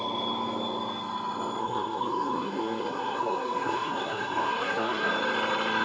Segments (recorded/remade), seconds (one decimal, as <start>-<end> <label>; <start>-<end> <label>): 0.0-1.6 recorded; 1.6-5.1 remade; 5.1-5.8 recorded